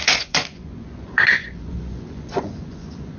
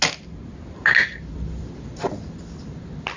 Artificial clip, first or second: first